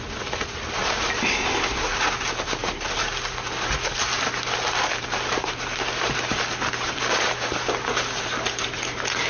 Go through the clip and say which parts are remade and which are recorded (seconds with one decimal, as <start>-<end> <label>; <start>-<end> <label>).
0.0-2.6 recorded; 2.6-3.1 remade; 3.1-9.3 recorded

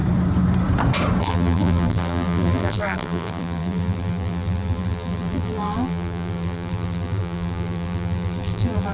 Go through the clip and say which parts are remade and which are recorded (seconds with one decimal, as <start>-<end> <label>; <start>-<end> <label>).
0.0-1.2 recorded; 1.2-8.9 remade